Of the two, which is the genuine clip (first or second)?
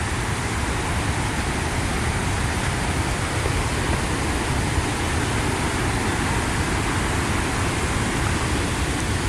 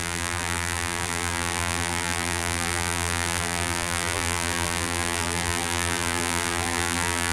first